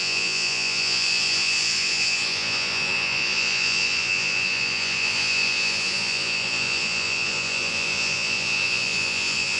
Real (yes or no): no